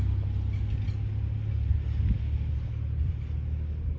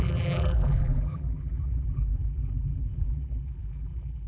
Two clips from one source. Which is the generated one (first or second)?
second